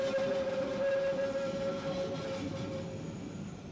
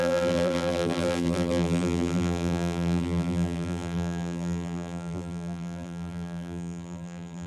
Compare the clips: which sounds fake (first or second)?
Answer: second